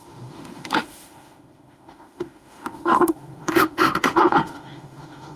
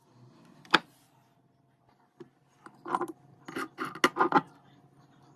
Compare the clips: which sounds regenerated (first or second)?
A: first